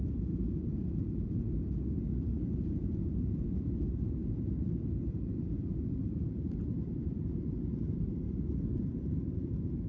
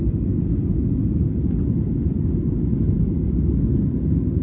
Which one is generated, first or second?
first